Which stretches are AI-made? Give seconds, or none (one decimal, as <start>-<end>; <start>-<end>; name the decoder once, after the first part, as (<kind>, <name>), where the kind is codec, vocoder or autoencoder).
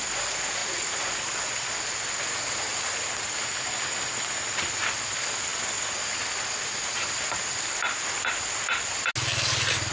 none